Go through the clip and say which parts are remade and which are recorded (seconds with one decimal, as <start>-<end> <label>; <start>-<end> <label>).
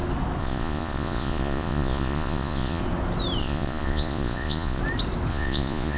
0.0-0.4 recorded; 0.4-2.8 remade; 2.8-3.4 recorded; 3.4-4.8 remade; 4.8-5.3 recorded; 5.3-6.0 remade